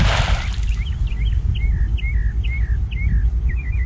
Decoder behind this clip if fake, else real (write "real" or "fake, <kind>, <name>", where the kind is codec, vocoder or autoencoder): real